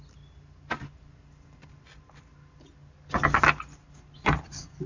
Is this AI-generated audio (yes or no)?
no